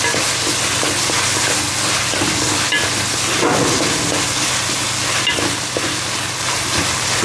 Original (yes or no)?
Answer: yes